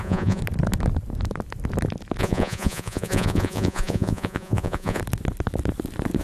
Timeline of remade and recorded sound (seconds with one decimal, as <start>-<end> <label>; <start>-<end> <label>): 0.0-0.4 remade; 0.4-2.2 recorded; 2.2-5.0 remade; 5.0-6.2 recorded